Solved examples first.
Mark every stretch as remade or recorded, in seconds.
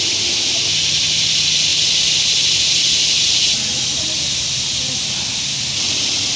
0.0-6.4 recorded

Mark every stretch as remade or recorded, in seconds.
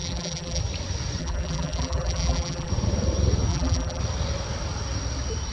0.0-0.6 remade; 0.6-1.2 recorded; 1.2-2.7 remade; 2.7-3.5 recorded; 3.5-4.0 remade; 4.0-5.5 recorded